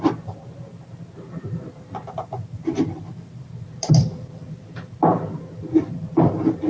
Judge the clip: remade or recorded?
remade